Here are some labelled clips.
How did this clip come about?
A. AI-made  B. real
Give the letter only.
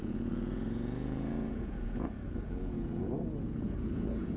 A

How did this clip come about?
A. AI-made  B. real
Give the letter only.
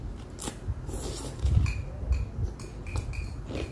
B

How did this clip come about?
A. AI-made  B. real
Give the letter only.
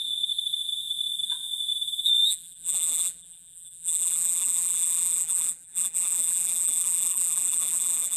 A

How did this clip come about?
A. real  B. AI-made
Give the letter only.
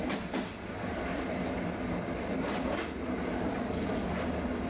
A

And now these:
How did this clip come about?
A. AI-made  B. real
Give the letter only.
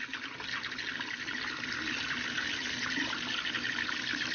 B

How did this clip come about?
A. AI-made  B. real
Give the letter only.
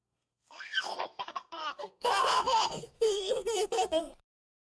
A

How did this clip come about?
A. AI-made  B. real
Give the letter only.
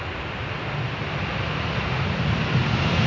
B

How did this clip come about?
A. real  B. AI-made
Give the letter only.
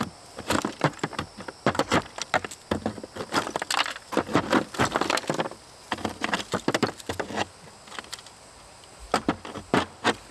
A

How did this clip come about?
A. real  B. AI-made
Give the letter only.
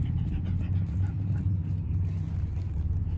A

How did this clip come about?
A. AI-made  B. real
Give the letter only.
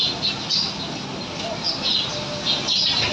B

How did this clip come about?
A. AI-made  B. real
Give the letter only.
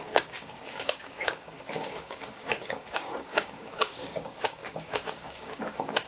A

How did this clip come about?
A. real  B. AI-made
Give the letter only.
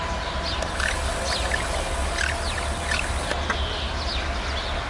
A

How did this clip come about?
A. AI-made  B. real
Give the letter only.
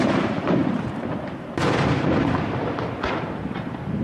A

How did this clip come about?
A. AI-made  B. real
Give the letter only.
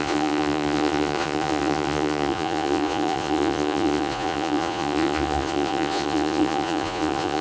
A